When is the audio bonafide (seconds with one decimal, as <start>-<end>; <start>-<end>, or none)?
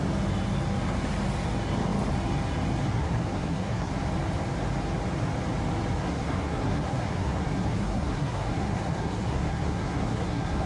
0.0-2.9; 3.9-6.0